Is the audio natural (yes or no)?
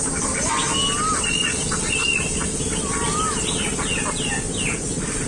yes